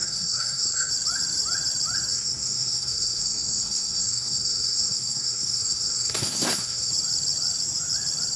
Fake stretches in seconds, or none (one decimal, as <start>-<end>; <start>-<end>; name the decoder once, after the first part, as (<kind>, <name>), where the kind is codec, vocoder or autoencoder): 0.0-0.9 (codec, SNAC); 2.1-6.9